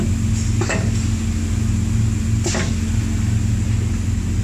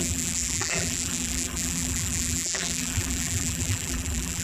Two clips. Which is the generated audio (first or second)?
second